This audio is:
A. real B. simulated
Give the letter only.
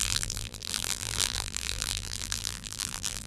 B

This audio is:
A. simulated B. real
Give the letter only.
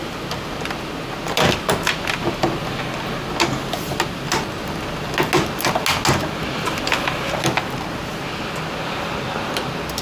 B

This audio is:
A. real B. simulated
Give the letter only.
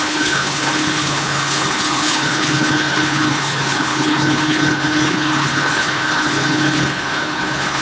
B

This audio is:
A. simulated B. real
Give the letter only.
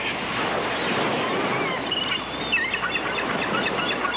B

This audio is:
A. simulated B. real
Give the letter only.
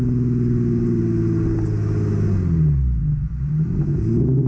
B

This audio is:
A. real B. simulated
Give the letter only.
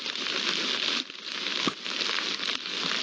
A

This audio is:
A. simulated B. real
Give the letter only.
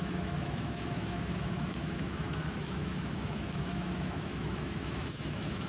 A